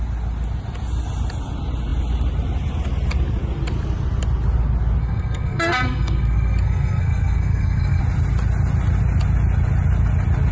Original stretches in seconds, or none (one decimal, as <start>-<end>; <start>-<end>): 0.0-5.0; 8.0-10.5

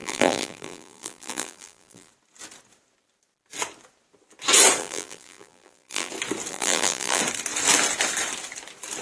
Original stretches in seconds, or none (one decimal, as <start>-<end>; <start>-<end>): 2.1-4.8; 6.1-6.5; 7.2-9.0

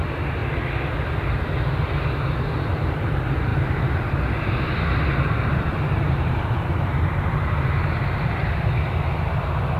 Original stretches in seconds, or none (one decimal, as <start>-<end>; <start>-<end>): 0.0-3.5; 8.6-9.8